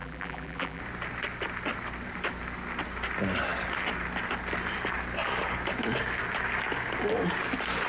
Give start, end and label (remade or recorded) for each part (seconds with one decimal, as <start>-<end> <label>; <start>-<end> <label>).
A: 0.0-0.8 remade; 0.8-7.9 recorded